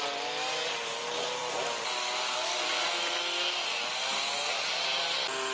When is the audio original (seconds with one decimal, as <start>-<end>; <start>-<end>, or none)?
0.0-5.5